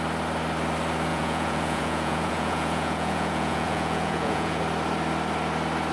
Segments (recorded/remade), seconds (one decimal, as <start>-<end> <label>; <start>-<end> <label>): 0.0-1.1 recorded; 1.1-4.6 remade; 4.6-5.9 recorded